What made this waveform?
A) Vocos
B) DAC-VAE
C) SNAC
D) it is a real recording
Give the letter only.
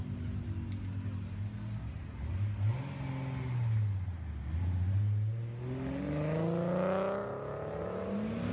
D